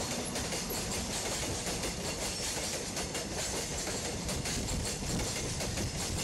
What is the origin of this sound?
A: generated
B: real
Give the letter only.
A